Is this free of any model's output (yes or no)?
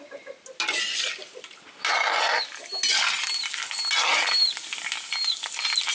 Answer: yes